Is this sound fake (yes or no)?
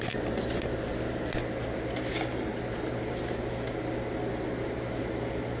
no